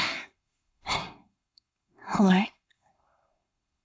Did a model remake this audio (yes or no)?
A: yes